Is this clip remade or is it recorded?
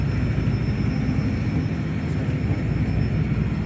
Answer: recorded